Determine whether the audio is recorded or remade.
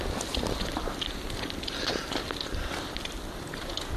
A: recorded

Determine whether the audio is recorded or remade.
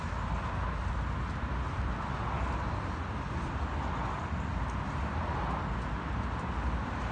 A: recorded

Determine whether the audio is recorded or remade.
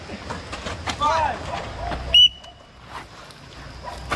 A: recorded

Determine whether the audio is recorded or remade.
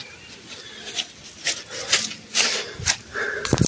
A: recorded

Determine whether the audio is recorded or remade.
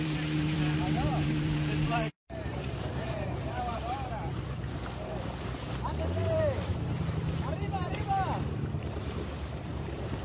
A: remade